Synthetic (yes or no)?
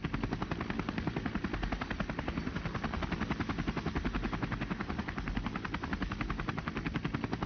no